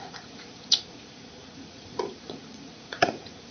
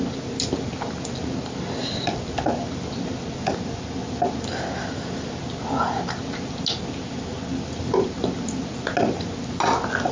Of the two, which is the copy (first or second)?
first